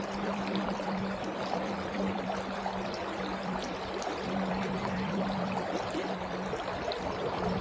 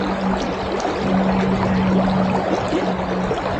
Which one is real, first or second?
second